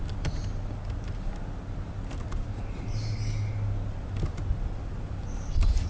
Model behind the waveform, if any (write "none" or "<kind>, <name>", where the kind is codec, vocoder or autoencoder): none